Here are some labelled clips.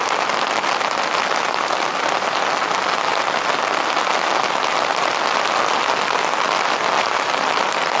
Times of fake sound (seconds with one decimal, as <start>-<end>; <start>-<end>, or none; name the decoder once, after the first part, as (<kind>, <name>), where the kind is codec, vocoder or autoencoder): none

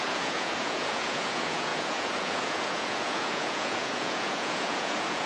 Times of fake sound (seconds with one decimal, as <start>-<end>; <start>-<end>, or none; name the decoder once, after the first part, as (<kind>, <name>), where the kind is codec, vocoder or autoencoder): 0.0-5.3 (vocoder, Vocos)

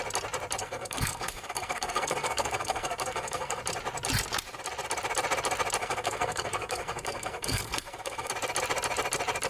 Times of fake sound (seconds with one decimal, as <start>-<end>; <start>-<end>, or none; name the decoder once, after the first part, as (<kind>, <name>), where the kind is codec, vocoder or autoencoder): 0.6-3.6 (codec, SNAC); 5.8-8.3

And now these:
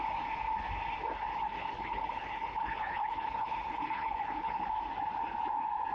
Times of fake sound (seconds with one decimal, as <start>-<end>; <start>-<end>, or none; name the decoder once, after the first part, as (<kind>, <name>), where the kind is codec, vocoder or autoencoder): 1.3-4.7 (codec, HILCodec)